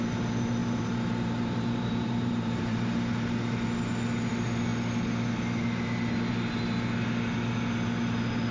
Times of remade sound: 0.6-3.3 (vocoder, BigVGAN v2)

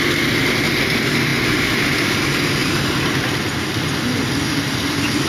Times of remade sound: 2.6-3.1 (vocoder, BigVGAN v2)

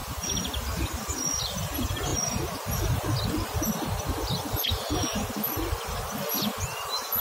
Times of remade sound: 1.4-2.1 (vocoder, BigVGAN v2); 6.4-7.2

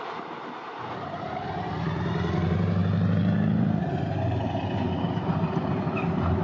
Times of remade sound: 0.0-6.4 (vocoder, BigVGAN v2)

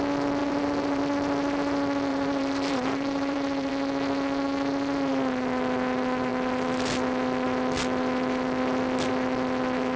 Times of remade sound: 0.4-1.0 (vocoder, BigVGAN v2); 2.1-3.7

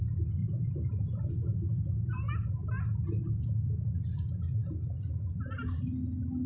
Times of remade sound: 0.4-1.3 (vocoder, BigVGAN v2)

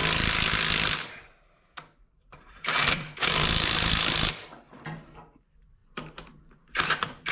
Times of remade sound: 1.3-7.3 (vocoder, BigVGAN v2)

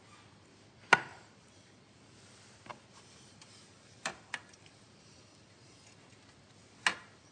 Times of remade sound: 1.1-2.0 (vocoder, BigVGAN v2); 2.7-6.1